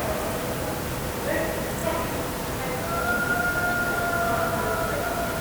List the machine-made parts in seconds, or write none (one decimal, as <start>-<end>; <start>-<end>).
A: none